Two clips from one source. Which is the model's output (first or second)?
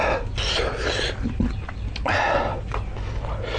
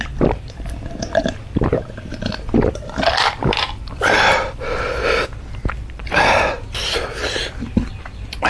second